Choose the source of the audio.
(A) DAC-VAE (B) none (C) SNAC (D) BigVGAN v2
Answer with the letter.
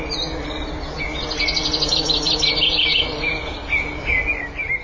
B